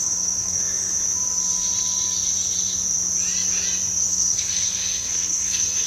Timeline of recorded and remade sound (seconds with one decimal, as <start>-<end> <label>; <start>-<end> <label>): 0.0-0.6 remade; 0.6-4.1 recorded; 4.1-5.9 remade

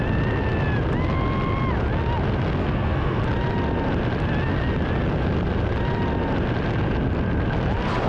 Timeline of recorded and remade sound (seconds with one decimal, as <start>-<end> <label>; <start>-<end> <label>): 0.0-2.6 recorded; 2.6-3.2 remade; 3.2-8.1 recorded

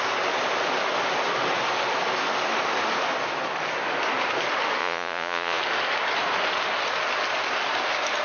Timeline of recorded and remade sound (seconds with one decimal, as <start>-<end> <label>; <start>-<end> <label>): 0.0-4.8 recorded; 4.8-5.6 remade; 5.6-8.2 recorded

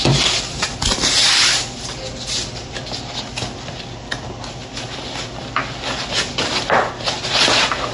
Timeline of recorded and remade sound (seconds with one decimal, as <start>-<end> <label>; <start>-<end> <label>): 0.0-7.9 recorded

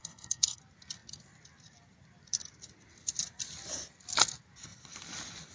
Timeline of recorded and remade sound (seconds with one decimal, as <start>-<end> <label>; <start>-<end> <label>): 0.0-0.6 remade; 0.6-5.5 recorded

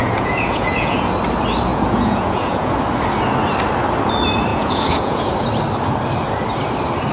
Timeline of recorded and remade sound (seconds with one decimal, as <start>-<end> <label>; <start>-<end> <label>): 0.0-1.1 remade; 1.1-1.7 recorded; 1.7-2.8 remade; 2.8-4.5 recorded; 4.5-5.3 remade; 5.3-7.1 recorded

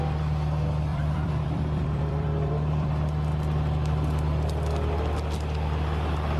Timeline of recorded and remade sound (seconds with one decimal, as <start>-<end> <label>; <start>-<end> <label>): 0.0-0.9 recorded; 0.9-2.9 remade; 2.9-6.4 recorded

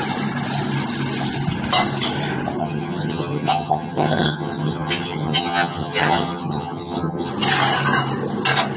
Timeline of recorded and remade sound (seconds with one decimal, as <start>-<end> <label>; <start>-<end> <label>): 0.0-2.6 recorded; 2.6-7.3 remade; 7.3-8.8 recorded